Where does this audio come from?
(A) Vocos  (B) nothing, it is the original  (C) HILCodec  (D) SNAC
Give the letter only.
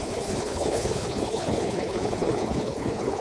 C